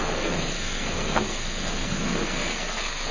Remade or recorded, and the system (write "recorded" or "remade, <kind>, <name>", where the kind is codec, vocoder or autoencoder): remade, codec, SNAC